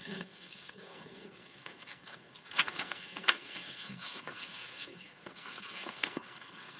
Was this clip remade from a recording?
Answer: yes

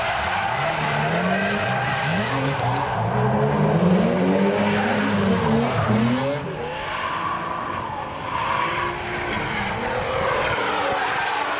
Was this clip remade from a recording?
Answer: no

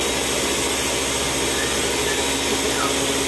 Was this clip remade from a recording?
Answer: no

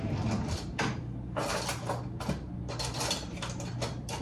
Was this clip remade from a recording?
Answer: no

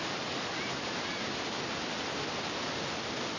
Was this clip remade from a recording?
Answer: no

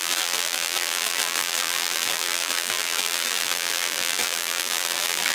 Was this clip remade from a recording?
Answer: yes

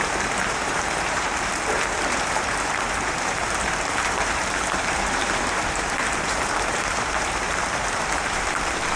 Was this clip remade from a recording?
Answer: yes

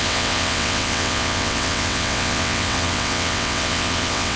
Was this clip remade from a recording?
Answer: yes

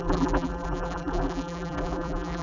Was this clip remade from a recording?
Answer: yes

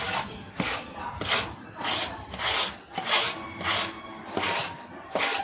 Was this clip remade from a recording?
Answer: no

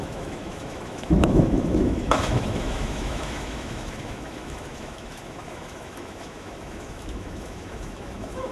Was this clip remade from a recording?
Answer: yes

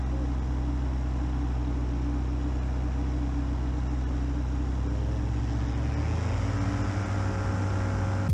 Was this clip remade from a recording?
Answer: no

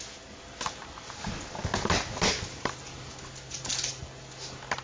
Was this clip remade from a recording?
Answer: no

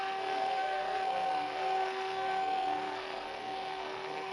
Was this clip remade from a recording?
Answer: yes